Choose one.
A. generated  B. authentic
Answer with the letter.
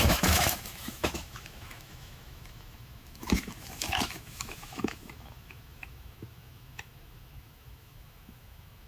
A